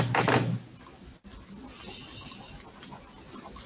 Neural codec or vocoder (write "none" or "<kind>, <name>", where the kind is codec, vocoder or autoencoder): none